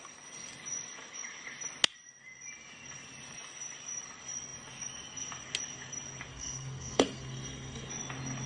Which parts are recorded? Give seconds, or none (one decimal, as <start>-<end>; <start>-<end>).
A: 0.0-6.3; 7.9-8.5